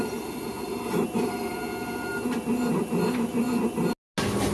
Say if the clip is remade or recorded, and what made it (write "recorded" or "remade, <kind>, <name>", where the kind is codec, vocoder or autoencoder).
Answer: recorded